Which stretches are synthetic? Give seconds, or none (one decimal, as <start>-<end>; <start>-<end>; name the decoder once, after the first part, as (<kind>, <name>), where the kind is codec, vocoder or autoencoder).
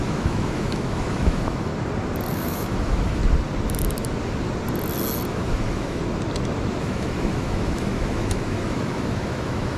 0.0-1.7 (autoencoder, DAC-VAE); 2.3-3.2; 5.3-6.0; 6.8-9.8